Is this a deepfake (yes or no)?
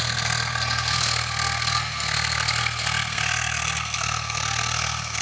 yes